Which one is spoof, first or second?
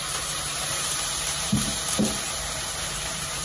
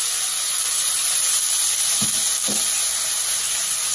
first